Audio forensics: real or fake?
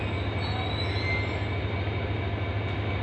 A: real